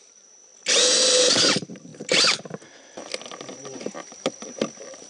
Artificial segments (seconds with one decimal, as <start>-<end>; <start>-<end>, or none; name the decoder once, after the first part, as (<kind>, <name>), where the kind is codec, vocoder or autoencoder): 0.0-0.5 (vocoder, BigVGAN v2); 1.4-1.9; 4.4-5.1